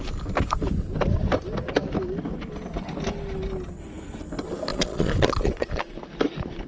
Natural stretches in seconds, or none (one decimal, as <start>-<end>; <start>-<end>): 0.0-4.7; 5.9-6.7